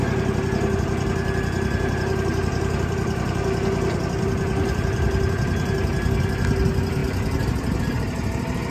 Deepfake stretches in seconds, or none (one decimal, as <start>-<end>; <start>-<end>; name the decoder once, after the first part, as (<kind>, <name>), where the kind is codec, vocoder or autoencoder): none